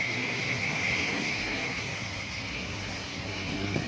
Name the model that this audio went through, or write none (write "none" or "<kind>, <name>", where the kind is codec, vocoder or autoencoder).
codec, SNAC